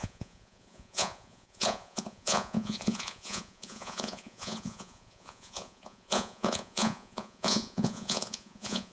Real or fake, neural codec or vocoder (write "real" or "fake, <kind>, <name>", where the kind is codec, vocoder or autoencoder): fake, vocoder, Vocos